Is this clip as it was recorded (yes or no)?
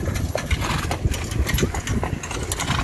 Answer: yes